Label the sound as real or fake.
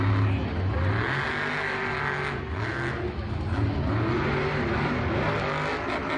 real